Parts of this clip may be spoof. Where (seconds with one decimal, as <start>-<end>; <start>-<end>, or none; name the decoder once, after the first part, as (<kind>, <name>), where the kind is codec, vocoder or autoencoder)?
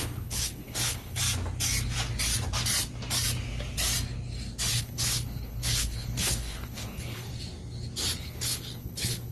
0.0-1.2 (codec, HILCodec); 4.7-7.3; 8.2-9.3